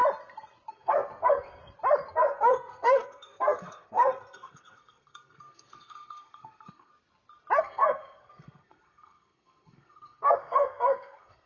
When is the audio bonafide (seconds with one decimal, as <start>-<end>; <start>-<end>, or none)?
0.0-0.7; 1.6-2.1; 6.9-7.6